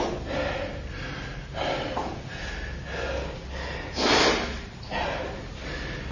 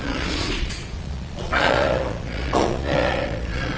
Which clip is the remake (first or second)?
second